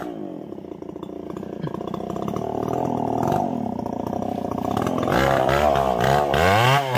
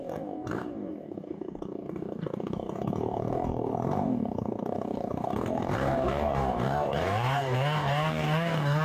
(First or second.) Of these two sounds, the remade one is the second